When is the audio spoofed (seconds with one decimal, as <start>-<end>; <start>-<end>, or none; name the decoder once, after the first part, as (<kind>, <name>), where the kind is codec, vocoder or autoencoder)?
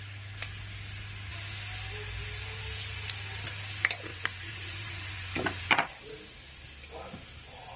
4.1-6.0 (vocoder, Vocos)